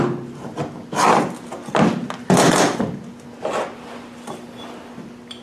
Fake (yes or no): no